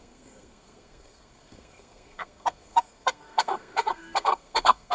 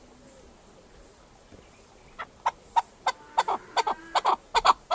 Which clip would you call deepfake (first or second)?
first